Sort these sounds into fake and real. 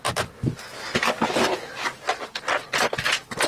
real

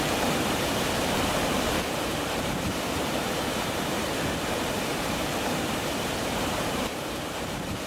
fake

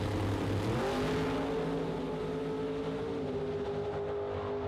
real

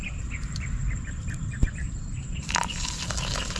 fake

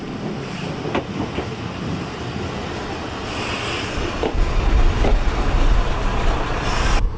real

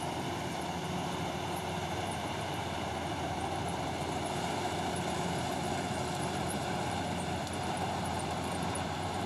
fake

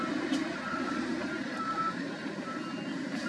fake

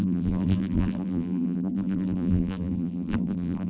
fake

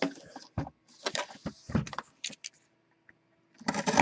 real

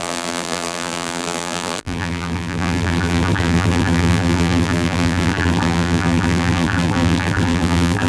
fake